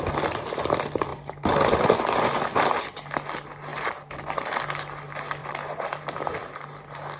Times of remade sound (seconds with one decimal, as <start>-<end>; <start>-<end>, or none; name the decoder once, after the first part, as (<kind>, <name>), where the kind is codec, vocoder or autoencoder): 1.1-2.2 (vocoder, BigVGAN v2); 3.7-4.5; 5.4-6.0